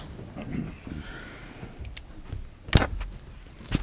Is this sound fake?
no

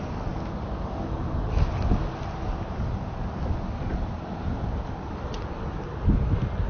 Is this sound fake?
no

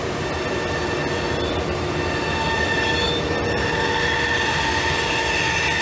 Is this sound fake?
no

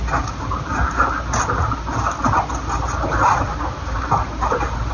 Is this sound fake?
no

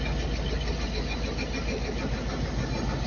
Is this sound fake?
no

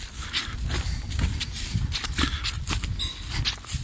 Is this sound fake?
no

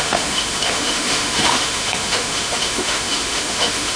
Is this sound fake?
yes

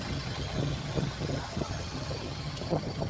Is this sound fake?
yes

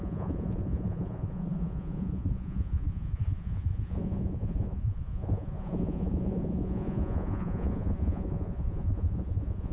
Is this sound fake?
yes